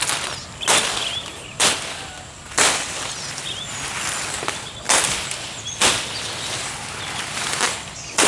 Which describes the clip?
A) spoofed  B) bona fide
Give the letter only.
B